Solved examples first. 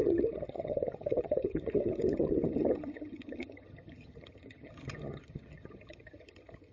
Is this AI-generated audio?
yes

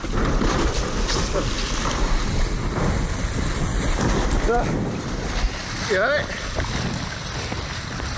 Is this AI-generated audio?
no